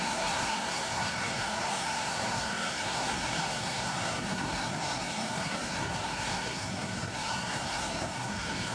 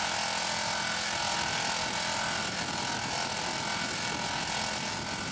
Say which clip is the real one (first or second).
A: second